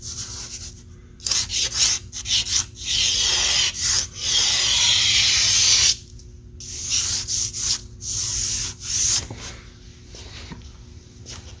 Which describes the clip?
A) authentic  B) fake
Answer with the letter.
A